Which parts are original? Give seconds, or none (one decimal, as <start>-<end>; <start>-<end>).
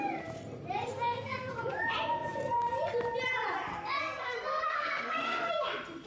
0.0-0.9; 1.5-3.7; 5.5-6.1